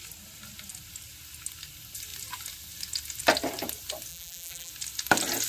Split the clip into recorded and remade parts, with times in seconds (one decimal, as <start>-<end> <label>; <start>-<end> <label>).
0.0-4.1 recorded; 4.1-4.7 remade; 4.7-5.5 recorded

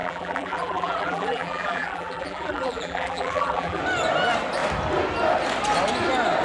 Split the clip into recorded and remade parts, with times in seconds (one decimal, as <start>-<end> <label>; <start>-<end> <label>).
0.0-3.8 remade; 3.8-6.4 recorded